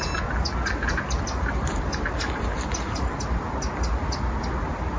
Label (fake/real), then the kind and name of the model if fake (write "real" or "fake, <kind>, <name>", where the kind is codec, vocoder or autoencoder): real